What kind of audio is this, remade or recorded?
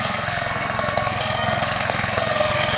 remade